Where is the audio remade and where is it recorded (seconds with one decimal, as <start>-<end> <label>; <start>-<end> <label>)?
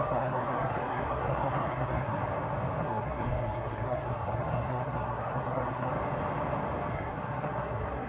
0.0-2.2 remade; 2.2-2.8 recorded; 2.8-5.9 remade; 5.9-6.9 recorded; 6.9-8.1 remade